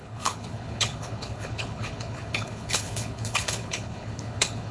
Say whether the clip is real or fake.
fake